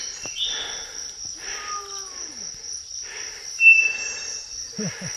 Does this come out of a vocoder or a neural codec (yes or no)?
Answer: no